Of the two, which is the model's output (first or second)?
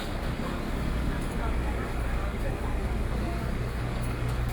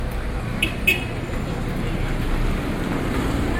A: first